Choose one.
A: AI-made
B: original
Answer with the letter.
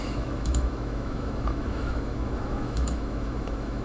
A